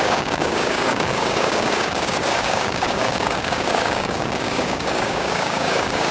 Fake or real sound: fake